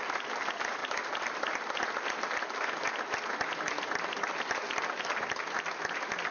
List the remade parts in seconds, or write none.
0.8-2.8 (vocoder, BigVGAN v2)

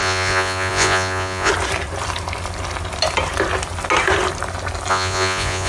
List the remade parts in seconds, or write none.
0.0-1.5 (vocoder, Vocos); 4.9-5.7

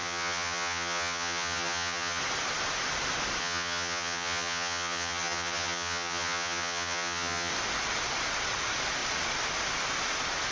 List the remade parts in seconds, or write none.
0.0-2.2 (vocoder, HiFi-GAN); 3.4-7.5

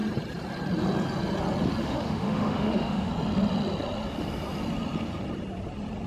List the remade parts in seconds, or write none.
1.8-3.1 (autoencoder, DAC-VAE)